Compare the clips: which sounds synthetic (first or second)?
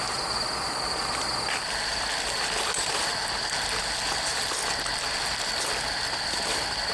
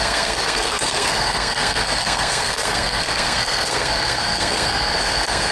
second